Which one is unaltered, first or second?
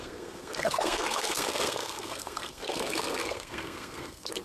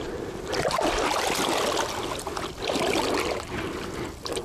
second